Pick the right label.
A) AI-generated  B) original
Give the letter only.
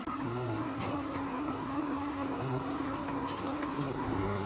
A